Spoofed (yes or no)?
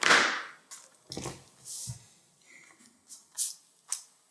no